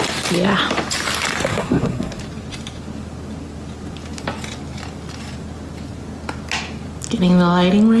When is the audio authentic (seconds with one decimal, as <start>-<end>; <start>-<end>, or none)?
0.0-1.5; 2.2-8.0